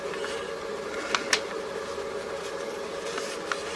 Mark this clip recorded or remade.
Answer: recorded